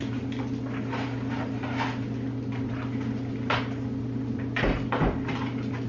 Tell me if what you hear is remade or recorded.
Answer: recorded